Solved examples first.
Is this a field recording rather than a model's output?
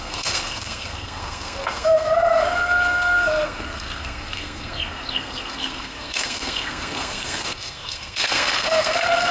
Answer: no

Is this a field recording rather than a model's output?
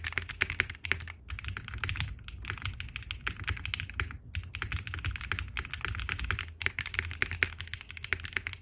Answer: yes